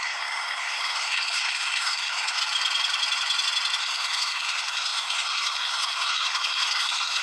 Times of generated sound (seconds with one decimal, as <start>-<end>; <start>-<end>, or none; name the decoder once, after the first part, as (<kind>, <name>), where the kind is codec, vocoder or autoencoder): 0.0-2.4 (codec, SNAC); 3.8-7.2